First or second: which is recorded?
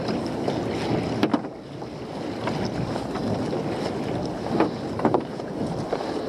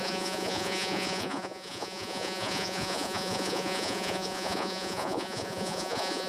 first